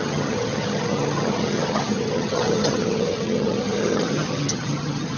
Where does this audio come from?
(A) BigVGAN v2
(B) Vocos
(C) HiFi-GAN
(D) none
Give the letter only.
C